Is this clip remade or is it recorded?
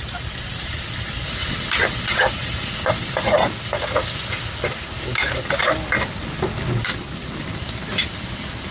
recorded